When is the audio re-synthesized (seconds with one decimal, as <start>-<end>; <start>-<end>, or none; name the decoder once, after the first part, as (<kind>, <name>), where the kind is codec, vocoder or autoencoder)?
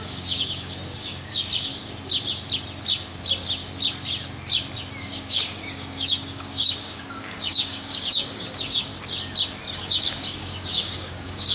0.0-1.7 (codec, DAC); 5.0-8.9; 9.8-11.5